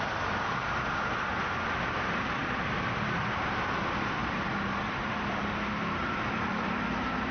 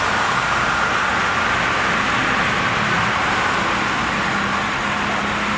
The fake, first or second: first